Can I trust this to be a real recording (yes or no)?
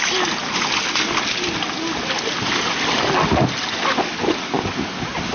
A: yes